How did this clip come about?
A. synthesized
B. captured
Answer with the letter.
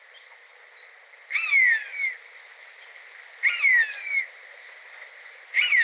B